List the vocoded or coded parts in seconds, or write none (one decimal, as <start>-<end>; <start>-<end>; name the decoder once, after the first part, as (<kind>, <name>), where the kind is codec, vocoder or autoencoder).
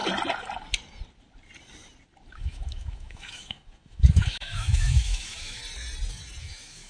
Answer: 2.3-5.6 (autoencoder, DAC-VAE); 6.4-6.9